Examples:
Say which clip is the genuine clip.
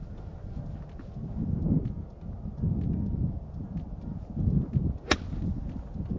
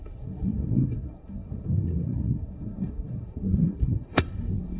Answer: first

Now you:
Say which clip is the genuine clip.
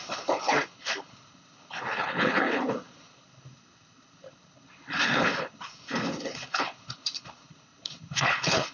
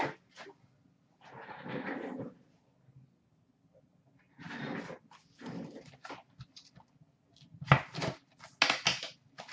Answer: second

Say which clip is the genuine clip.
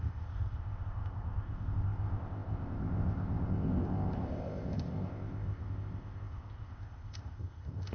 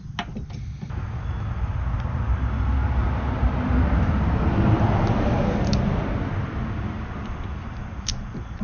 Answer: second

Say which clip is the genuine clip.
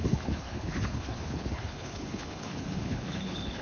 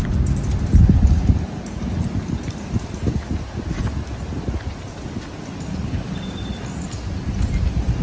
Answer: second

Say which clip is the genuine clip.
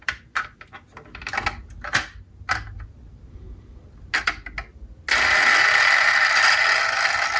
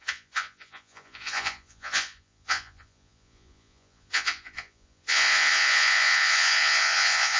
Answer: first